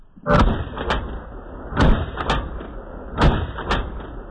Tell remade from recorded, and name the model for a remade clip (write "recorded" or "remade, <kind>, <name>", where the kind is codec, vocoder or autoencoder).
recorded